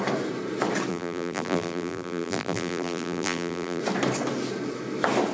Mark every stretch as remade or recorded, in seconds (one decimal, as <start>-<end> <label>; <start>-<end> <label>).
0.0-0.9 recorded; 0.9-3.8 remade; 3.8-5.3 recorded